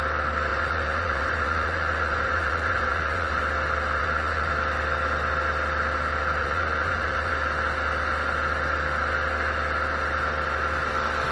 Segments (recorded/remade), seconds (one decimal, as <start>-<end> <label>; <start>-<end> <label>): 0.0-0.5 recorded; 0.5-3.4 remade; 3.4-4.0 recorded; 4.0-4.5 remade; 4.5-6.4 recorded; 6.4-7.3 remade; 7.3-11.3 recorded